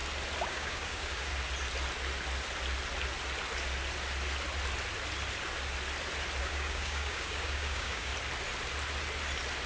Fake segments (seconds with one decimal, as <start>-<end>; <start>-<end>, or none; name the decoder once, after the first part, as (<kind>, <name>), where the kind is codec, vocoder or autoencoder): 0.5-1.3 (codec, DAC); 6.4-8.1